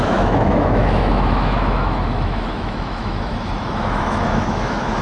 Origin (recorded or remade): remade